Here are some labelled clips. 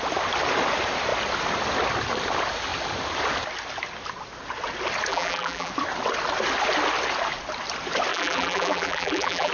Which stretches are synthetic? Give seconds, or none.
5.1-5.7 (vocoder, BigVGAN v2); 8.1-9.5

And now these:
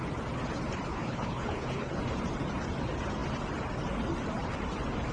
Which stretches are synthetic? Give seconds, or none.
0.9-2.0 (codec, HILCodec)

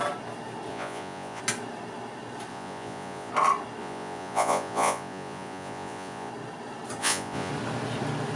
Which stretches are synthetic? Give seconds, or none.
0.7-1.4 (vocoder, Vocos); 2.5-3.3; 3.8-6.3; 7.0-7.5

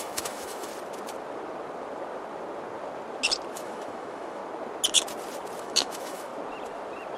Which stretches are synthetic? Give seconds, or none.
0.0-0.7 (autoencoder, DAC-VAE); 3.5-4.4; 5.6-6.3

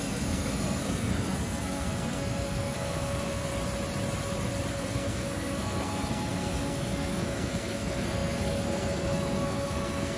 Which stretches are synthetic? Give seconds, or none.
0.0-3.5 (codec, SNAC); 4.7-10.2